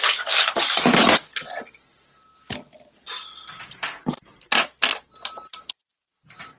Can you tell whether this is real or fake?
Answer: real